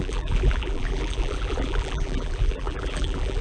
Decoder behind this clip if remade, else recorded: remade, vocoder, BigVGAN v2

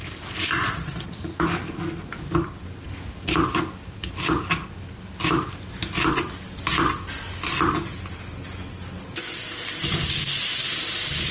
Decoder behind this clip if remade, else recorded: recorded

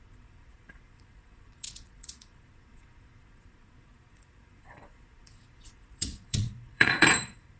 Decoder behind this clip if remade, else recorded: remade, vocoder, Vocos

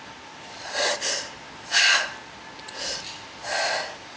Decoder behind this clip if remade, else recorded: recorded